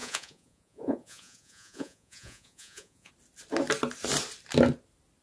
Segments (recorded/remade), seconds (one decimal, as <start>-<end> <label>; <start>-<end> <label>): 0.0-3.1 remade; 3.1-5.2 recorded